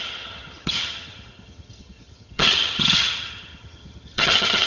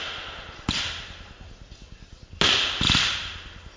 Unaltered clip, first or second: second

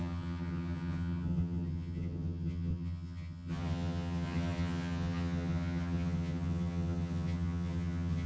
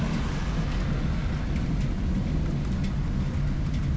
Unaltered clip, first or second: second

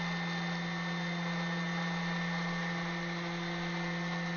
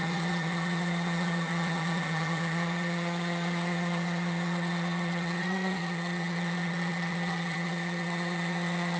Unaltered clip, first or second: first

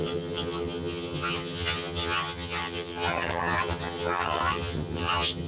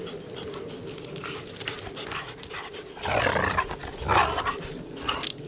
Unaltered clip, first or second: second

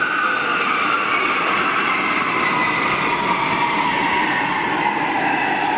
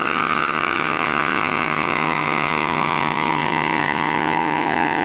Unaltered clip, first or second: first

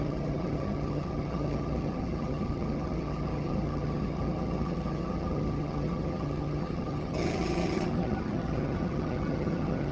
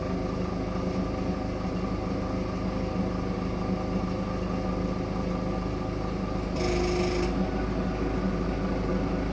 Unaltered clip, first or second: second